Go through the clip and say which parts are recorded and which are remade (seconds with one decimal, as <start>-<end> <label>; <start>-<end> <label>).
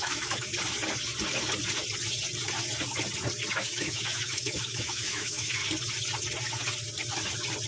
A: 0.0-0.5 remade; 0.5-3.5 recorded; 3.5-5.6 remade; 5.6-7.7 recorded